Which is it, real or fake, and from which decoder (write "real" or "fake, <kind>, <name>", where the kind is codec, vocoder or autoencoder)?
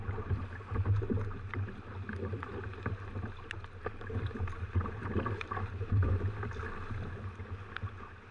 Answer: real